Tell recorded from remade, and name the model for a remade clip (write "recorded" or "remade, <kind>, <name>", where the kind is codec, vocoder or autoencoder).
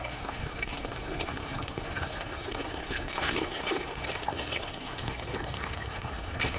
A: remade, codec, SNAC